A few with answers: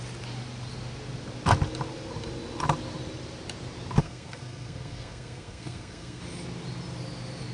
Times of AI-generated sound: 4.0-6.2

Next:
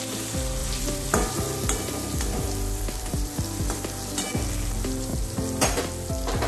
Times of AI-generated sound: 0.6-3.6; 5.1-5.8

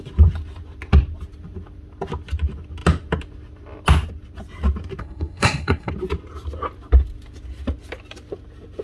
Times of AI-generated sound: 5.0-5.9

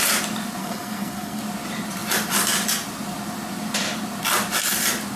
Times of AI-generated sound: 0.6-1.4

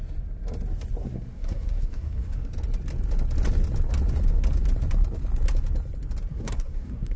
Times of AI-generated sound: 1.0-2.5; 6.3-7.2

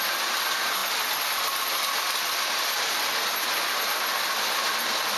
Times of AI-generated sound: 0.8-1.4

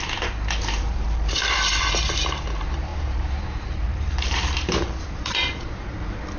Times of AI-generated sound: 0.0-6.4